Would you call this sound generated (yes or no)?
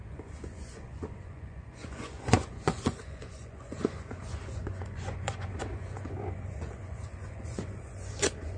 yes